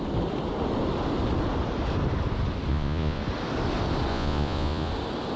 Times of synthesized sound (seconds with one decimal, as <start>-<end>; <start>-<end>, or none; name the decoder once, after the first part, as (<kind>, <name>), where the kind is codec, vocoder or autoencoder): 2.7-3.2 (vocoder, Vocos); 4.1-4.9